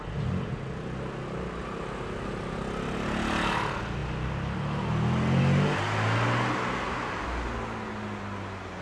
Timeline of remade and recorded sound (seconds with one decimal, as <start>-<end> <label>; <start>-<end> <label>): 0.0-8.8 recorded